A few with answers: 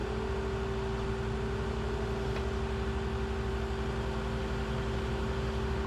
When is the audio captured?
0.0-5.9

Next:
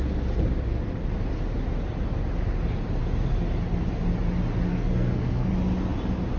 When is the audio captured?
0.0-4.7; 5.5-6.4